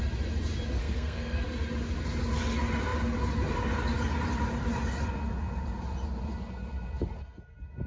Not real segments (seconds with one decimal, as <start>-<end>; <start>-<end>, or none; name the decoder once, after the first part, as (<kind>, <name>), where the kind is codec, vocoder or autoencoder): 0.8-1.4 (codec, SNAC)